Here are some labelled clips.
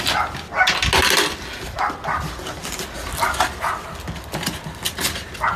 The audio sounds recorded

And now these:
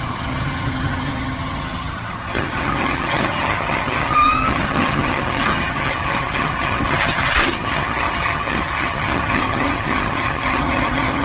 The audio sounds remade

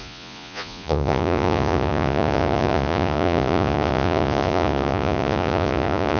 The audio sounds remade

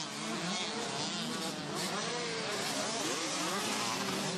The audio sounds recorded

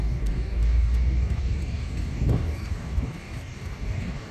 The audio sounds remade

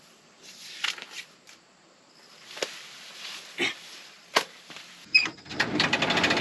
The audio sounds recorded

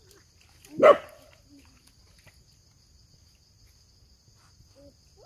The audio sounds recorded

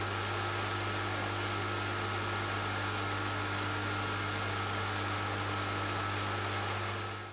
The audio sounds recorded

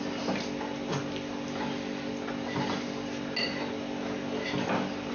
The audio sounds recorded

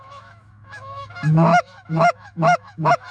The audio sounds remade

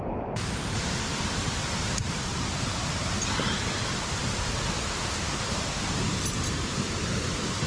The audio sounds remade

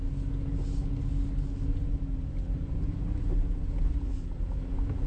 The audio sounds recorded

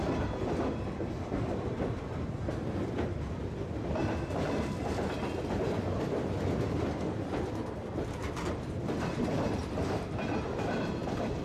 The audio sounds recorded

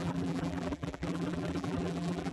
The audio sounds remade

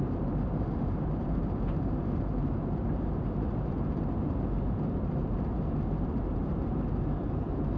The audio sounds remade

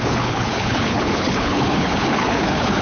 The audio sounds remade